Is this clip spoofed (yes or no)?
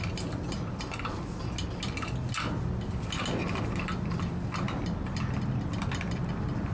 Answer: no